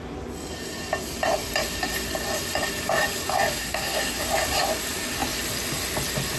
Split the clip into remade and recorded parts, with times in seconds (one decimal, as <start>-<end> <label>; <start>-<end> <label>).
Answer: 0.0-3.6 recorded; 3.6-4.2 remade; 4.2-6.4 recorded